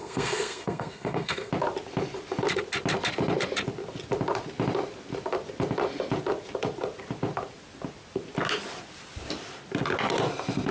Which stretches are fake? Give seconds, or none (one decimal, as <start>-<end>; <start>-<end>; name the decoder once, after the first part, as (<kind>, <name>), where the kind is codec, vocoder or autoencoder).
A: 0.0-1.5 (codec, SNAC)